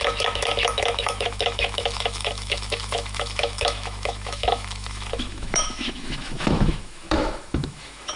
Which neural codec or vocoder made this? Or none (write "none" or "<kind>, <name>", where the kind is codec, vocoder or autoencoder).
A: autoencoder, DAC-VAE